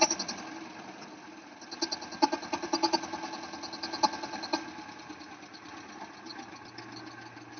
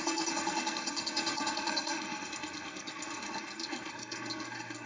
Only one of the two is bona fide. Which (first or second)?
first